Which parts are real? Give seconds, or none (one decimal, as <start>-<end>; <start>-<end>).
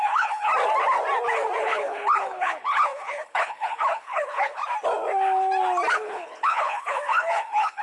0.5-1.6; 4.6-5.9